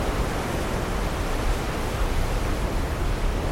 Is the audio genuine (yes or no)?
yes